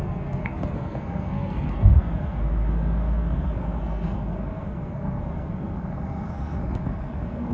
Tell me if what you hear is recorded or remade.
remade